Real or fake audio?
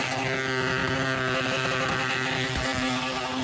real